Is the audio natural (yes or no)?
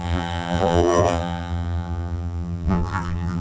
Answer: no